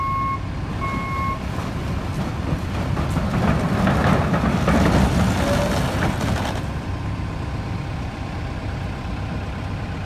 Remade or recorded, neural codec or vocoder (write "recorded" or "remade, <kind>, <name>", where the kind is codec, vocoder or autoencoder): recorded